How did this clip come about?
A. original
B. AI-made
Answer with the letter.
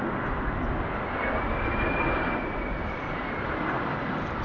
A